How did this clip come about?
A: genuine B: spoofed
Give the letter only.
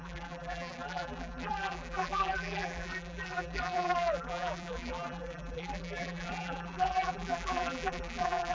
B